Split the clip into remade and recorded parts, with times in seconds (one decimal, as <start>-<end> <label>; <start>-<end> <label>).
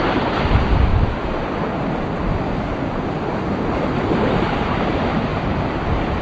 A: 0.0-0.9 remade; 0.9-4.6 recorded; 4.6-5.3 remade; 5.3-6.2 recorded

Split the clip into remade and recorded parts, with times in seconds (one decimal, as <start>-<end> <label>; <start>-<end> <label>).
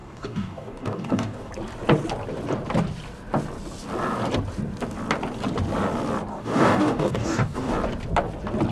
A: 0.0-1.5 remade; 1.5-6.3 recorded; 6.3-7.7 remade; 7.7-8.7 recorded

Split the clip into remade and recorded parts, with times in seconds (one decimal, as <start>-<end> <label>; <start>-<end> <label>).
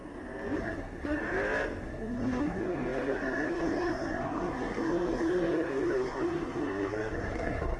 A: 0.0-0.6 recorded; 0.6-1.2 remade; 1.2-1.8 recorded; 1.8-7.8 remade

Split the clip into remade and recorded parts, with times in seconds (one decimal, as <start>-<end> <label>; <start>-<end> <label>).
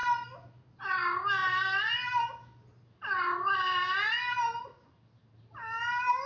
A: 0.0-6.3 recorded